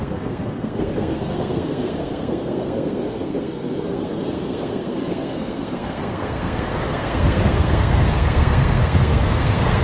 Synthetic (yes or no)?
yes